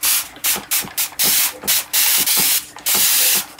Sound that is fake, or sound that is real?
real